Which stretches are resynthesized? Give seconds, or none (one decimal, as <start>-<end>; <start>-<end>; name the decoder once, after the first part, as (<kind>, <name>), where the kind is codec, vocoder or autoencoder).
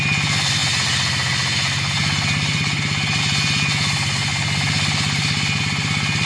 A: none